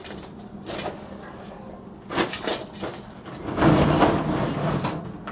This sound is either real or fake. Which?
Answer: real